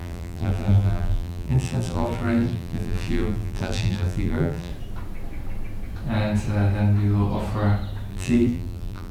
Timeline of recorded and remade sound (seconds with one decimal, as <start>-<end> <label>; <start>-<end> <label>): 0.0-4.7 remade; 4.7-8.1 recorded; 8.1-9.1 remade